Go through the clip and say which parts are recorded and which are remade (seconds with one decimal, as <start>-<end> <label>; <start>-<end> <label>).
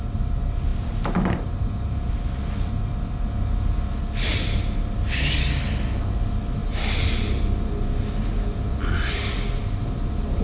0.0-10.4 recorded